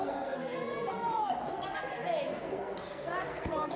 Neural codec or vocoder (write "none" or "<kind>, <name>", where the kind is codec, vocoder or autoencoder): codec, SNAC